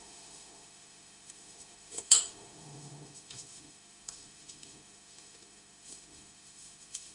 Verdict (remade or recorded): remade